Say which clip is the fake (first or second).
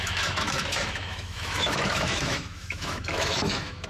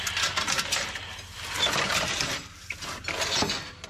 first